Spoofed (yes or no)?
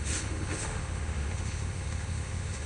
yes